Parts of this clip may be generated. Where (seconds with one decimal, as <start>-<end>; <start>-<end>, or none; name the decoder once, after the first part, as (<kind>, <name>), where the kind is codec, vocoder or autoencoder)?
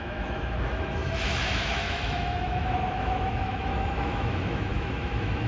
0.0-5.5 (autoencoder, DAC-VAE)